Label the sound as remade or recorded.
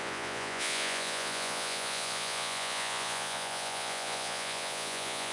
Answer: remade